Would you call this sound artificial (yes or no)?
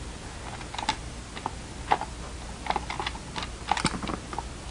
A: no